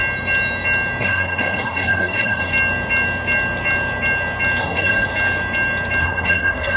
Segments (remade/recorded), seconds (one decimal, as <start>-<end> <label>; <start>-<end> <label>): 0.0-1.0 recorded; 1.0-2.5 remade; 2.5-4.6 recorded; 4.6-5.1 remade; 5.1-6.0 recorded; 6.0-6.8 remade